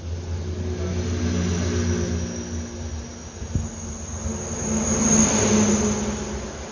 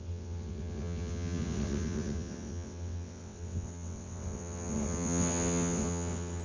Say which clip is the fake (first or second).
second